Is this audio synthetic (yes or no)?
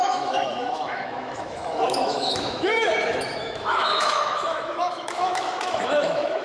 yes